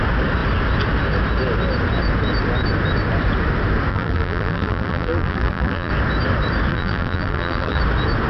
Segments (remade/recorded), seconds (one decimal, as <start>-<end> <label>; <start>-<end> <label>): 0.0-3.9 recorded; 3.9-5.9 remade; 5.9-6.7 recorded; 6.7-7.8 remade; 7.8-8.3 recorded